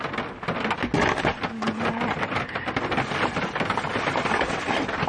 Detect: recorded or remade recorded